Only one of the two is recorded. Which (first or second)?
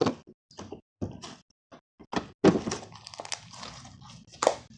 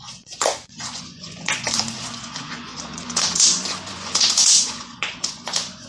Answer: first